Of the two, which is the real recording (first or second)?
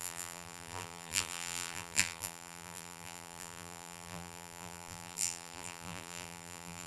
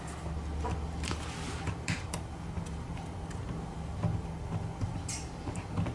second